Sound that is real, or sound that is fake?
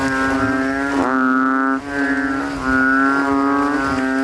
real